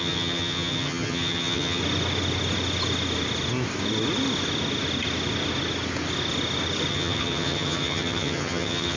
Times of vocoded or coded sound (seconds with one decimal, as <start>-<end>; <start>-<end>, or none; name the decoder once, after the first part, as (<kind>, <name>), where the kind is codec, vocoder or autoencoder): 0.0-1.8 (vocoder, HiFi-GAN); 6.9-9.0